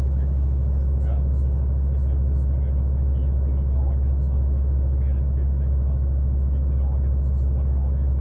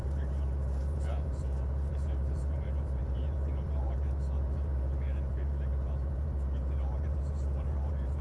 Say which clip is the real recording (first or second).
first